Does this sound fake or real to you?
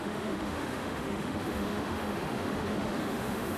fake